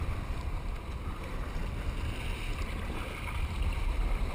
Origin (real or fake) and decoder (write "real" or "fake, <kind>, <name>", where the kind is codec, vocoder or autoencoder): real